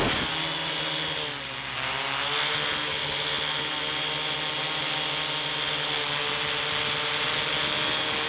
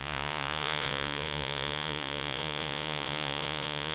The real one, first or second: first